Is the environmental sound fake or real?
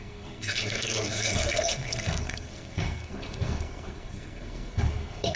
fake